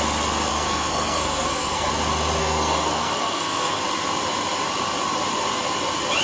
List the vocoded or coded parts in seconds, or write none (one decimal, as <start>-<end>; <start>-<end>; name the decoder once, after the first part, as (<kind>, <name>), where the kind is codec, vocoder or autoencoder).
0.5-1.9 (codec, SNAC); 2.4-3.8

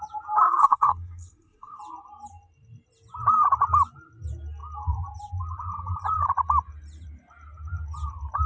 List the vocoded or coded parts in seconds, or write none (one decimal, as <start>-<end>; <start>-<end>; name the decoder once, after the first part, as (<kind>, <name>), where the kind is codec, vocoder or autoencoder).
0.4-1.8 (codec, SNAC)

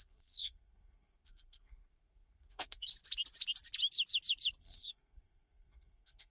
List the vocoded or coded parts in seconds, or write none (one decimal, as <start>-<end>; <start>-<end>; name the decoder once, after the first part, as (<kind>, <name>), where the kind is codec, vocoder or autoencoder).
0.0-2.9 (codec, SNAC); 4.6-6.3

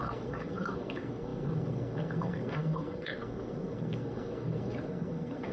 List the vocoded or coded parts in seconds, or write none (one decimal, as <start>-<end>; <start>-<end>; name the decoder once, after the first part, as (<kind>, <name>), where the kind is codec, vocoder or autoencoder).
0.0-5.5 (codec, SNAC)

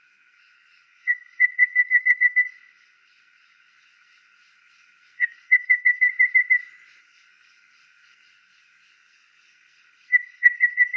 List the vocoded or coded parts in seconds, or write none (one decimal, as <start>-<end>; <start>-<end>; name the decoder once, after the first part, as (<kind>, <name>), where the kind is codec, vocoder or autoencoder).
0.0-6.1 (codec, SNAC); 7.0-11.0

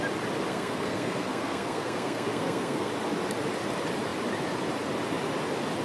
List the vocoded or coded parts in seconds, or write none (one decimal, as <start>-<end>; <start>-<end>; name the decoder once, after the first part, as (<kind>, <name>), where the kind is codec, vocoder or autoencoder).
0.5-2.9 (codec, SNAC)